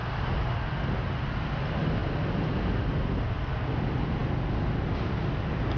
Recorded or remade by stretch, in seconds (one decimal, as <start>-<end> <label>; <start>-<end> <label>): 0.0-5.8 recorded